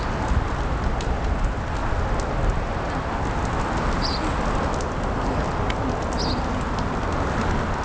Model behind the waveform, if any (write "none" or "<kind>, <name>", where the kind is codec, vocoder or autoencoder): none